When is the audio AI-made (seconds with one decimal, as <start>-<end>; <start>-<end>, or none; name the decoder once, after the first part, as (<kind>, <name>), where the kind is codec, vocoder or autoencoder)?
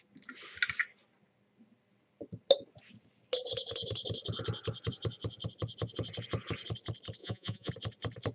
7.2-7.7 (vocoder, Vocos)